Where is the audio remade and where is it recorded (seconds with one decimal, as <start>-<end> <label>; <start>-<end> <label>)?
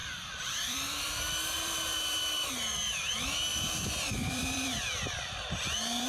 0.0-2.5 remade; 2.5-3.5 recorded; 3.5-6.1 remade